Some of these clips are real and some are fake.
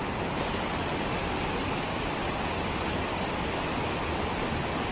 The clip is real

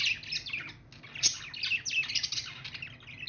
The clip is real